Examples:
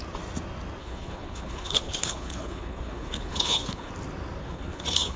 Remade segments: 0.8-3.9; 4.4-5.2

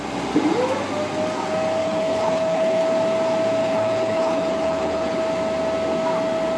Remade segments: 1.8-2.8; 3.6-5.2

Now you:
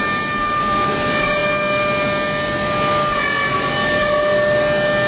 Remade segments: none

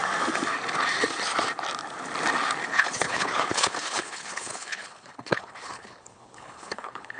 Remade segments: 2.7-7.2

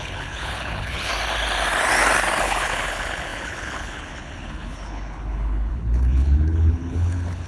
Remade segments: 0.0-1.1; 2.4-7.5

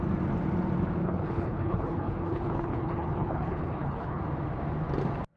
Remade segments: 1.0-4.2

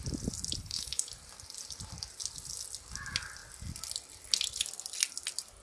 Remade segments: 0.6-1.1

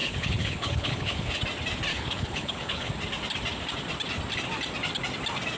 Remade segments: 0.0-1.4; 1.9-2.9